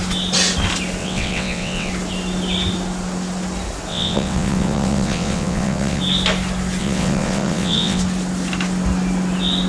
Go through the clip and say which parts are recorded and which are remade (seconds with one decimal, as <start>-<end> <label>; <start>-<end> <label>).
0.0-1.0 recorded; 1.0-1.9 remade; 1.9-3.9 recorded; 3.9-6.0 remade; 6.0-6.8 recorded; 6.8-8.0 remade; 8.0-9.7 recorded